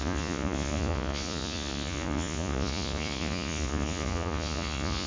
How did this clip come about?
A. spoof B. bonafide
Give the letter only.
A